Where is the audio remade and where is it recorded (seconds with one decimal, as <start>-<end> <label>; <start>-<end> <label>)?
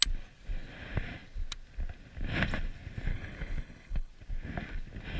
0.0-3.1 recorded; 3.1-4.1 remade; 4.1-5.2 recorded